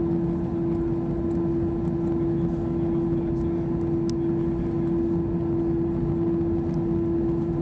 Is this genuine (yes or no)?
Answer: yes